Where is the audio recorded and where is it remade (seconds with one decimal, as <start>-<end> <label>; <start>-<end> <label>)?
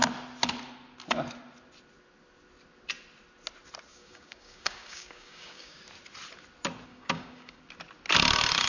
0.0-3.9 recorded; 3.9-5.8 remade; 5.8-6.9 recorded; 6.9-7.6 remade; 7.6-8.7 recorded